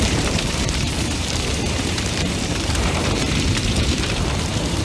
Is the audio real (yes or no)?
no